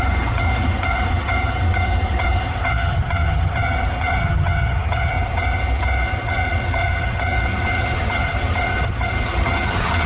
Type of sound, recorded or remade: remade